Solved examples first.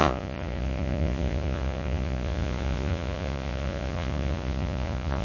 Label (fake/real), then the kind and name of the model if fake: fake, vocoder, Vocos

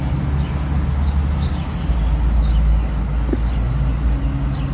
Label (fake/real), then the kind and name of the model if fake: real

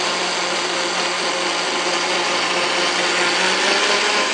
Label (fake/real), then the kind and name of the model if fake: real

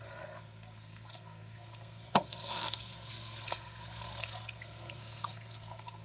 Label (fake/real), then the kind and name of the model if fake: fake, codec, SNAC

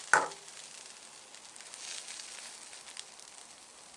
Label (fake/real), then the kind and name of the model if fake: real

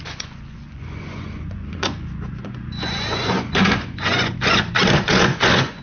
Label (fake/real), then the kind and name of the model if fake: fake, vocoder, Vocos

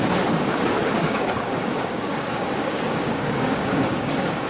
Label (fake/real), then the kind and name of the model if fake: fake, codec, DAC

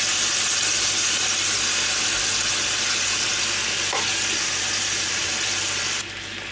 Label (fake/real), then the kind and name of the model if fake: real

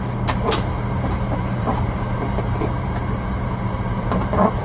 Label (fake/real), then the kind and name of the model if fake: fake, vocoder, BigVGAN v2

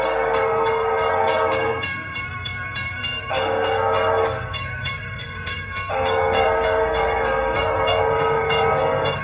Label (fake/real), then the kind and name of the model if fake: fake, codec, SNAC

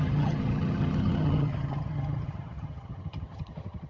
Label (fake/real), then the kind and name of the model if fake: fake, vocoder, HiFi-GAN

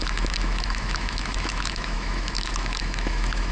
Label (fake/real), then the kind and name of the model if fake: fake, autoencoder, DAC-VAE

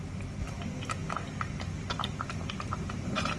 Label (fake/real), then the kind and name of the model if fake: real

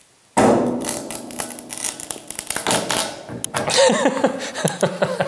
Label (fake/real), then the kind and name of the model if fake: real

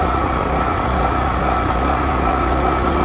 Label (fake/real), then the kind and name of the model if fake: fake, vocoder, Vocos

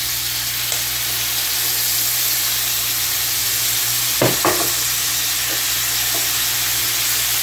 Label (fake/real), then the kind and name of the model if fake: real